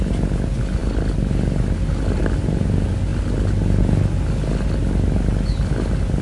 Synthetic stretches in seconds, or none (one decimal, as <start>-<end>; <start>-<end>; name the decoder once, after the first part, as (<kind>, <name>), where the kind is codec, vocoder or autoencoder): none